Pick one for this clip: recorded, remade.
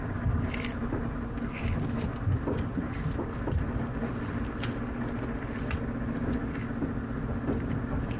recorded